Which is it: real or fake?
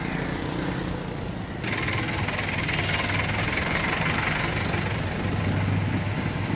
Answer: real